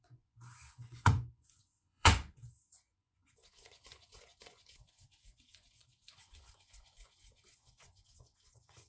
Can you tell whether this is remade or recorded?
remade